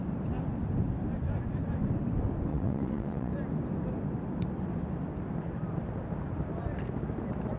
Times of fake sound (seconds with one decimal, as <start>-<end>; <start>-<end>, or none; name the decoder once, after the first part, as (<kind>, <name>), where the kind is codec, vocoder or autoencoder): 2.5-3.3 (vocoder, WaveNeXt)